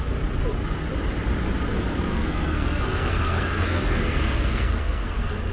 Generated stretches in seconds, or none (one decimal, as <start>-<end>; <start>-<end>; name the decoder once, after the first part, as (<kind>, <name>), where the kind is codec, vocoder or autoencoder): 2.1-5.5 (codec, SNAC)